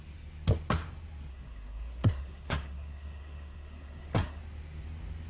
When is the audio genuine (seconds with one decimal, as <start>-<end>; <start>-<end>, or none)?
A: 0.0-1.3; 4.4-5.3